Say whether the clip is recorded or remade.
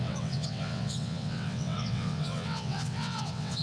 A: remade